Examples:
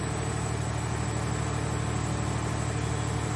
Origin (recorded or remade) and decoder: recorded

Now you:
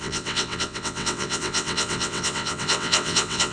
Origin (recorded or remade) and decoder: remade, vocoder, WaveNeXt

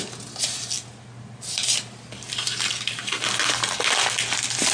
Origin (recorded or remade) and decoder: recorded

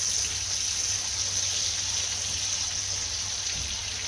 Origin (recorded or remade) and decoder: recorded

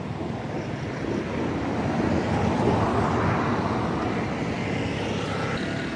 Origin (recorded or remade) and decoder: recorded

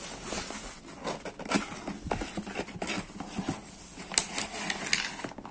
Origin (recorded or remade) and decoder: recorded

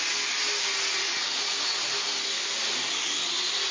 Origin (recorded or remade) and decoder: recorded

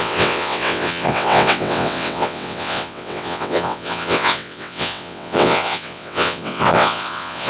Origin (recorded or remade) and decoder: remade, vocoder, WaveNeXt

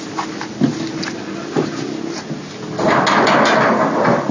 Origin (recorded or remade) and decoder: recorded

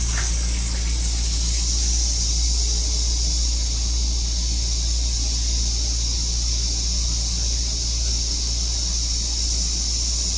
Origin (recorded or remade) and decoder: recorded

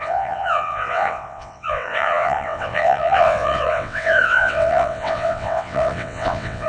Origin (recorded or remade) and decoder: remade, vocoder, WaveNeXt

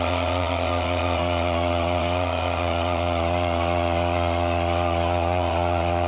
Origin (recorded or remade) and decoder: remade, vocoder, WaveNeXt